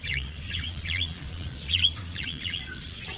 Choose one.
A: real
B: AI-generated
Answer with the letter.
B